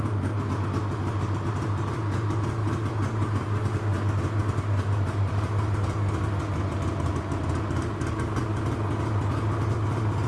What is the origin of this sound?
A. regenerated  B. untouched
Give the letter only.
B